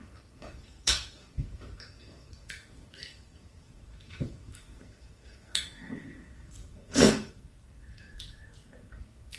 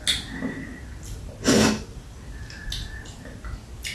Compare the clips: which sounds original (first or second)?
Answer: second